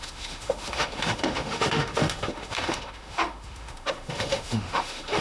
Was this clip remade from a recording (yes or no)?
yes